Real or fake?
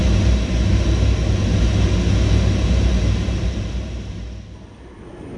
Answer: real